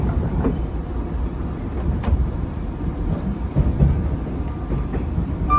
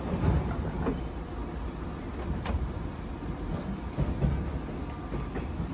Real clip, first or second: second